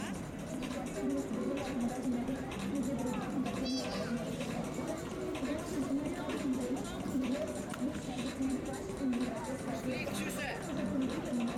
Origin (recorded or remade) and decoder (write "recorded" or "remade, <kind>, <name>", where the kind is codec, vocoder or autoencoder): remade, vocoder, BigVGAN v2